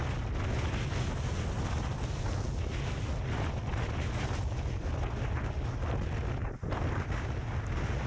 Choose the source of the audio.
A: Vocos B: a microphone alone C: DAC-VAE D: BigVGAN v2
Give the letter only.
B